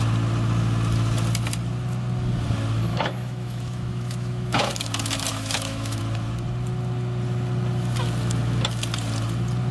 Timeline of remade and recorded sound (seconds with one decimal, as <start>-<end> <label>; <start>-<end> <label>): 0.0-2.9 recorded; 2.9-4.7 remade; 4.7-5.3 recorded; 5.3-6.0 remade; 6.0-9.7 recorded